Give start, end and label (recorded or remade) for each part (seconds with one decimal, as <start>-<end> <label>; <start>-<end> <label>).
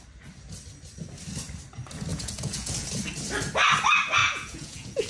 0.0-2.1 recorded; 2.1-2.9 remade; 2.9-4.2 recorded; 4.2-5.1 remade